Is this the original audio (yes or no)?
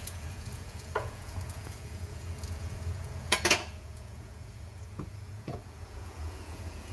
no